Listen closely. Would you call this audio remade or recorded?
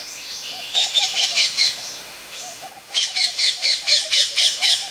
remade